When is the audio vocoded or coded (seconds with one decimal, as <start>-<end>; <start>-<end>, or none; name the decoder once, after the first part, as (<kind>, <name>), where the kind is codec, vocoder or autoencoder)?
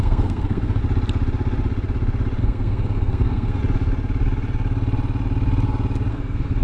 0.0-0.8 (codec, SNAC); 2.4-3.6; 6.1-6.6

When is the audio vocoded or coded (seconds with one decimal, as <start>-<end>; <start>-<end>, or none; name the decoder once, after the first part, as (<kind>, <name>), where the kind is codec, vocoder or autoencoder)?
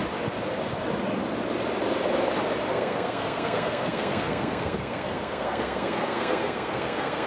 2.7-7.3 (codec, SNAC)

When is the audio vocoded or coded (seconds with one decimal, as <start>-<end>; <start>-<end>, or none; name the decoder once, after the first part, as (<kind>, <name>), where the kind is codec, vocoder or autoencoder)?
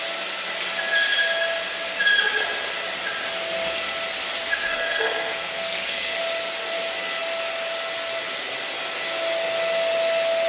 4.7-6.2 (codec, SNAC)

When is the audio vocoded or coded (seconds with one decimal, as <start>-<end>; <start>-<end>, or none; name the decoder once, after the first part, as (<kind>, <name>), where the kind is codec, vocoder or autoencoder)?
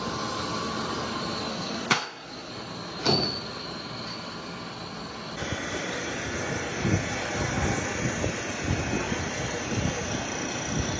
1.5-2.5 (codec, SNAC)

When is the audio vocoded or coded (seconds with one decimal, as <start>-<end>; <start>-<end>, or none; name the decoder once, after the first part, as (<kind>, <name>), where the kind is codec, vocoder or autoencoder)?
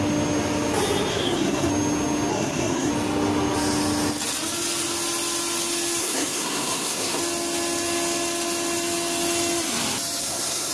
1.1-1.7 (codec, SNAC); 2.3-2.9; 6.0-7.2; 10.2-10.7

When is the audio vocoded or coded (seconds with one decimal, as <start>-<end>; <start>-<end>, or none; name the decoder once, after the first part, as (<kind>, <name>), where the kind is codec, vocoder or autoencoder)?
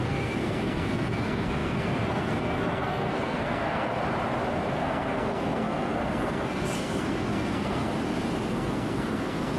0.0-3.9 (codec, SNAC); 4.7-7.9; 8.5-9.6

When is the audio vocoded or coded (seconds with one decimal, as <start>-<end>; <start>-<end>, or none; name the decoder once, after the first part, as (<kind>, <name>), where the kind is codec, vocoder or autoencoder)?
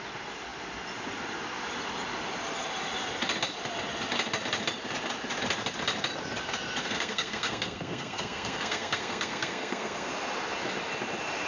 6.8-10.1 (codec, SNAC)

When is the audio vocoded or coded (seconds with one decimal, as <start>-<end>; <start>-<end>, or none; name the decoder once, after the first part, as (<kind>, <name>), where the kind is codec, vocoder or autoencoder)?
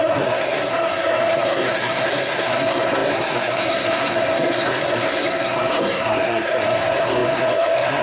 0.0-8.0 (codec, SNAC)